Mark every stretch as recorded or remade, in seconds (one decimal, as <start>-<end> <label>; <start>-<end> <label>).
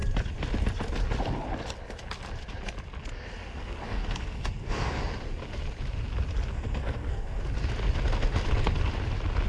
0.0-3.4 recorded; 3.4-5.0 remade; 5.0-6.5 recorded; 6.5-7.4 remade; 7.4-9.5 recorded